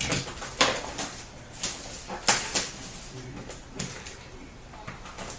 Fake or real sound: real